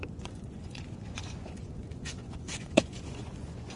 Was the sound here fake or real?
fake